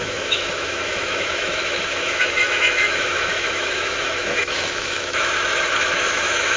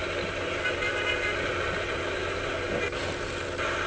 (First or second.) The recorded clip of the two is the second